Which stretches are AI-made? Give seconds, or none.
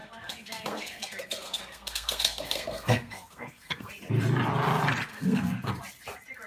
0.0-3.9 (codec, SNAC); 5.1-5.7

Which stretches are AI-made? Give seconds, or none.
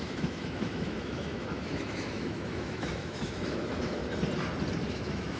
0.0-4.0 (autoencoder, DAC-VAE); 4.9-5.4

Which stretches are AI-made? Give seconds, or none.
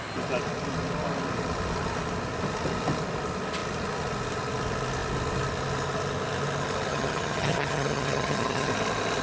6.9-8.7 (vocoder, HiFi-GAN)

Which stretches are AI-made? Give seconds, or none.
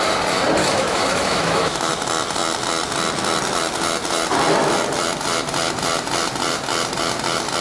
0.6-1.9 (autoencoder, DAC-VAE)